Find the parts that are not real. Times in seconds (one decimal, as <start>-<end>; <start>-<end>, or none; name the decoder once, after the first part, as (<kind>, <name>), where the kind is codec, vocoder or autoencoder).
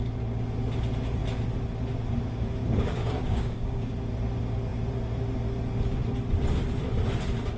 2.6-3.9 (codec, DAC)